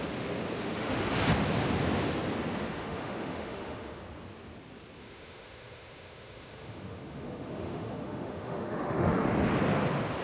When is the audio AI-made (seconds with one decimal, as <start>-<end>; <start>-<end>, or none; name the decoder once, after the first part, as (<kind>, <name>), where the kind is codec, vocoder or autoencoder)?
0.6-1.1 (autoencoder, DAC-VAE); 2.6-4.0; 5.0-9.3